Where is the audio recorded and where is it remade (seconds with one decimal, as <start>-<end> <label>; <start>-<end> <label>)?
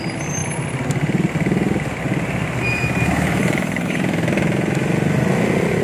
0.0-3.4 recorded; 3.4-4.0 remade; 4.0-5.8 recorded